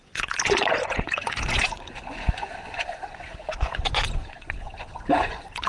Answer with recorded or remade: remade